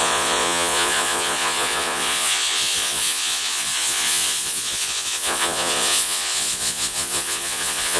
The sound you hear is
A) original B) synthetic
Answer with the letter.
B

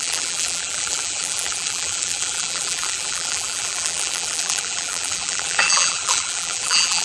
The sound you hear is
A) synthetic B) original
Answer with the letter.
A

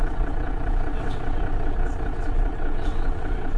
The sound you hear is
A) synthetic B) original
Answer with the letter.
A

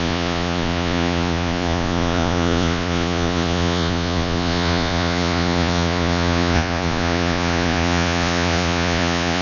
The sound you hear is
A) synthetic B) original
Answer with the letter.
A